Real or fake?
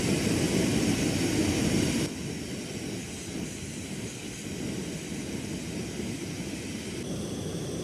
real